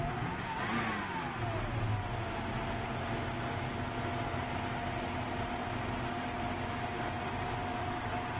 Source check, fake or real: real